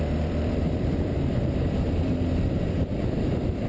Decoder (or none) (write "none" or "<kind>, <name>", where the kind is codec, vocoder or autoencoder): vocoder, BigVGAN v2